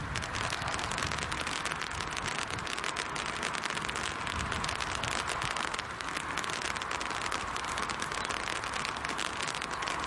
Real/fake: real